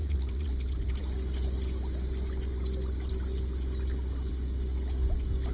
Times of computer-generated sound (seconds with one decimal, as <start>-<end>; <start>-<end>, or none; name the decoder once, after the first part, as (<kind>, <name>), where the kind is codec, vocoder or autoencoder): 0.0-0.5 (vocoder, Vocos)